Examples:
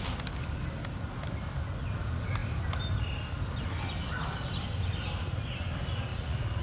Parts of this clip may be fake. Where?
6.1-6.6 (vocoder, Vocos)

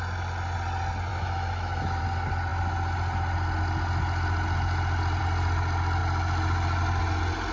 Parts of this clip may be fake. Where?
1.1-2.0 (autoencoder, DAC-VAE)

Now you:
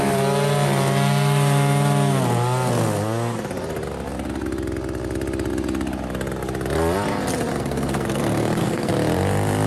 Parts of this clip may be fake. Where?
7.5-8.9 (codec, SNAC)